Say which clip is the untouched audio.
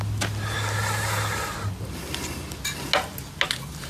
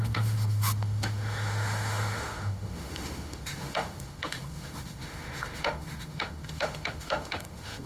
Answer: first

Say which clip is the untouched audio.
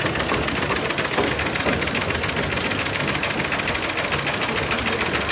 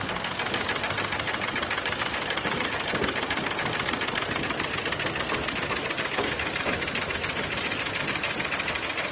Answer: first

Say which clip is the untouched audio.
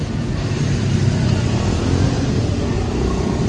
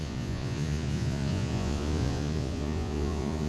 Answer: first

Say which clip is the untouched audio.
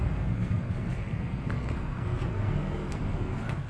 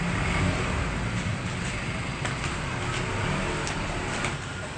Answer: second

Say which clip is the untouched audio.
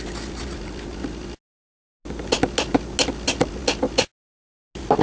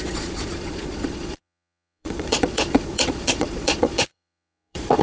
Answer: first